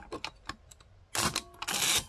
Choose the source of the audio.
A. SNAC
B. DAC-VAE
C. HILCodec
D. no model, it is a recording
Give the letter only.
D